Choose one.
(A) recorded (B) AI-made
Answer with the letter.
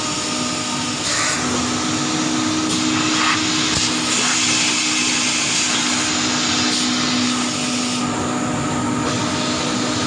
A